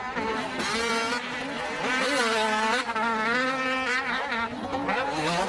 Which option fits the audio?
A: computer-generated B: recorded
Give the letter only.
B